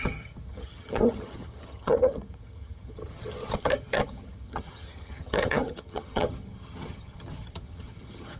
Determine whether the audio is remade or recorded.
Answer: remade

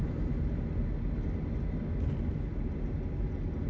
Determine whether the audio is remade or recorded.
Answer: recorded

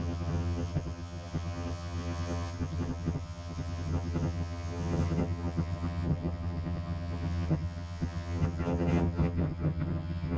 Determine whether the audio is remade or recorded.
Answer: remade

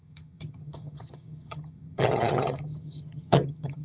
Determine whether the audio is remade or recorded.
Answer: remade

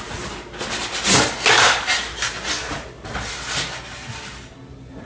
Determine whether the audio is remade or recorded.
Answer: recorded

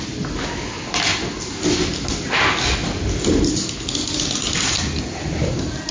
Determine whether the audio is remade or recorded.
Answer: recorded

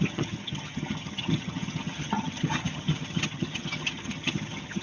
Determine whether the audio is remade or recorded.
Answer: remade